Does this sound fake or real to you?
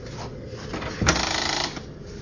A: real